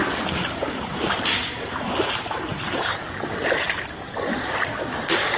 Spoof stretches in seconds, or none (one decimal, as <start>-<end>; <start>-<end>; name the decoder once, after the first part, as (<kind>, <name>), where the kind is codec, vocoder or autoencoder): 0.0-5.4 (vocoder, BigVGAN v2)